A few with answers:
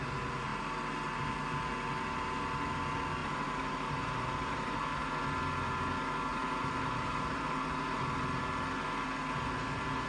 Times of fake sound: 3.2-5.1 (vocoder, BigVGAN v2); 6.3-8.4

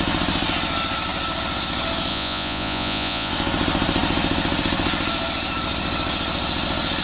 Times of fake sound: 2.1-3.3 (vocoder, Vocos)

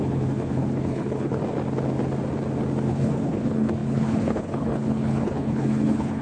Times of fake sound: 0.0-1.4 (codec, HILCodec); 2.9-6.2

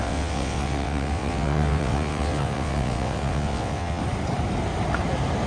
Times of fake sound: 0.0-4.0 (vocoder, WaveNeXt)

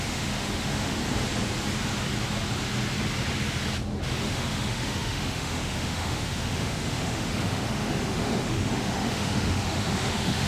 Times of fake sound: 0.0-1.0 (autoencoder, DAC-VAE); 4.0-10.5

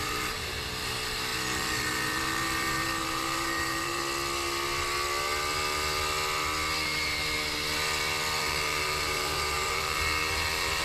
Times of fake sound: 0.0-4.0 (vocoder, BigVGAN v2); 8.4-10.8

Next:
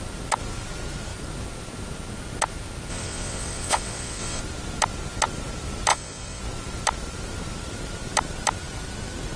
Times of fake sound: 2.9-4.4 (vocoder, WaveNeXt); 5.9-6.4

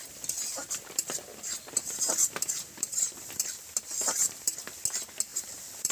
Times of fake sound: 0.0-3.5 (vocoder, BigVGAN v2); 5.3-5.9